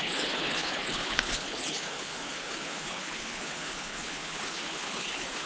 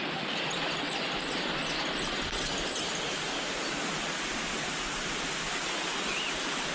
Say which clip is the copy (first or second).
first